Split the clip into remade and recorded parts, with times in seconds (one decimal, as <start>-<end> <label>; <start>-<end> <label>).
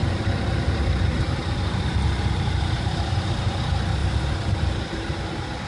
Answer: 0.0-3.4 remade; 3.4-4.0 recorded; 4.0-5.1 remade; 5.1-5.7 recorded